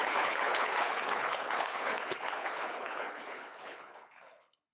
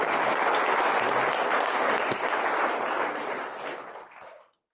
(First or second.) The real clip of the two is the second